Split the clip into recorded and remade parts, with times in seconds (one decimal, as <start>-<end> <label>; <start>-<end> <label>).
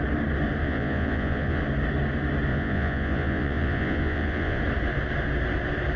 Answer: 0.0-0.6 recorded; 0.6-1.6 remade; 1.6-2.5 recorded; 2.5-4.6 remade; 4.6-6.0 recorded